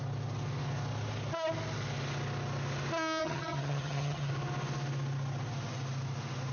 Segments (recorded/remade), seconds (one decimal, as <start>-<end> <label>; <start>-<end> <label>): 0.0-3.2 recorded; 3.2-4.3 remade; 4.3-6.5 recorded